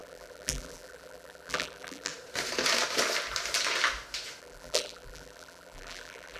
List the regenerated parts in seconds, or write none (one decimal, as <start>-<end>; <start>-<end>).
0.0-2.1; 4.4-6.4